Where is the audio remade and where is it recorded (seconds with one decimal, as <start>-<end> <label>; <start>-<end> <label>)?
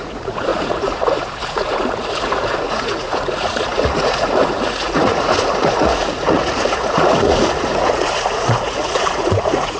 0.0-9.8 remade